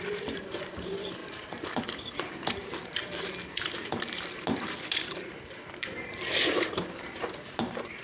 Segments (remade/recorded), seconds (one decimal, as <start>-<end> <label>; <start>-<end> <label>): 0.0-8.0 remade